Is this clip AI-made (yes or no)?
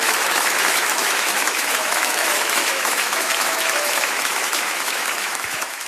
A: yes